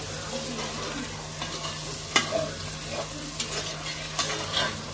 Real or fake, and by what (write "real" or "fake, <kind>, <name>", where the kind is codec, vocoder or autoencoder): real